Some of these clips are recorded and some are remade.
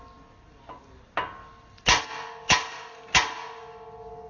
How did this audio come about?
recorded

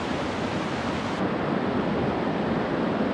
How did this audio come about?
recorded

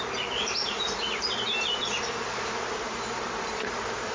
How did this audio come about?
remade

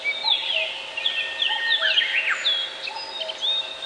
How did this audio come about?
recorded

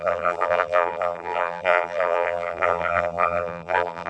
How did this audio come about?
remade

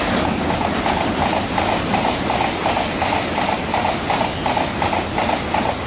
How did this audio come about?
recorded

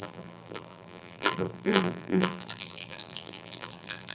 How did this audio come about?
remade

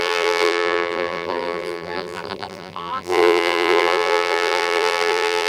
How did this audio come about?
remade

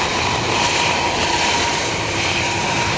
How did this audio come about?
remade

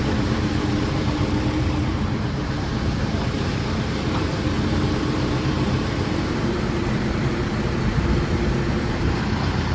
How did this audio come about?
remade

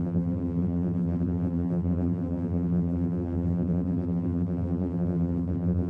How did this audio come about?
remade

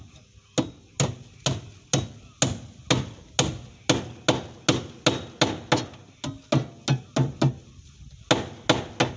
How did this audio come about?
recorded